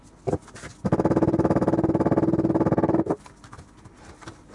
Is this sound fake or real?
real